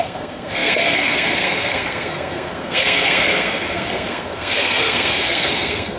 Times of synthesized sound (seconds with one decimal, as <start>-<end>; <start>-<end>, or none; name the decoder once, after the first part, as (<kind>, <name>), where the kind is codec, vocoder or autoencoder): 0.0-6.0 (codec, SNAC)